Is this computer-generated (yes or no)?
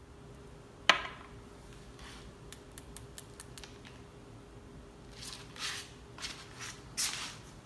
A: no